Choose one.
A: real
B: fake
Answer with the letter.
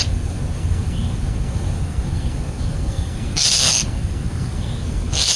B